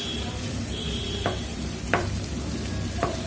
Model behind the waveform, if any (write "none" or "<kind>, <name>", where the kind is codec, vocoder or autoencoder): vocoder, BigVGAN v2